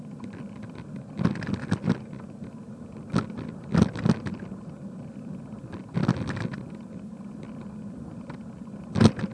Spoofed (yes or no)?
no